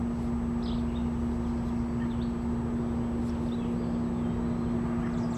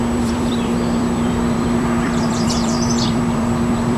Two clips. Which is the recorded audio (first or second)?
first